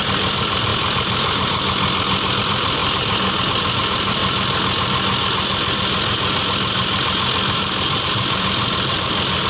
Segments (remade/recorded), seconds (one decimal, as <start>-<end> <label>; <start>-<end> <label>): 0.0-0.7 remade; 0.7-2.4 recorded; 2.4-2.8 remade; 2.8-3.4 recorded; 3.4-4.2 remade; 4.2-8.0 recorded; 8.0-9.5 remade

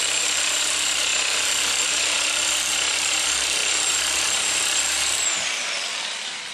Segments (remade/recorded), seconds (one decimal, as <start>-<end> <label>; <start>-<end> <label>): 0.0-6.5 remade

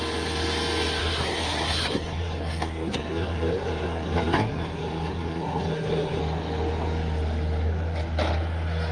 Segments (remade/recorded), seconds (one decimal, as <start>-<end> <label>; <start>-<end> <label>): 0.0-1.0 recorded; 1.0-6.2 remade; 6.2-8.9 recorded

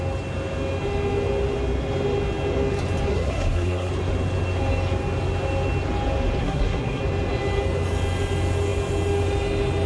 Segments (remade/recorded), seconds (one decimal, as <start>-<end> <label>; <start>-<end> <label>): 0.0-3.1 recorded; 3.1-3.9 remade; 3.9-6.4 recorded; 6.4-7.0 remade; 7.0-9.9 recorded

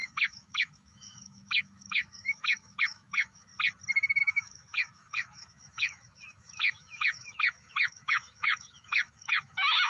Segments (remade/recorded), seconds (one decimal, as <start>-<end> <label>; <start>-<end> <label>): 0.0-3.5 remade; 3.5-4.2 recorded; 4.2-9.9 remade